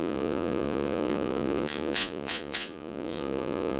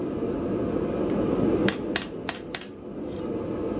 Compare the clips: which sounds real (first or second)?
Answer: second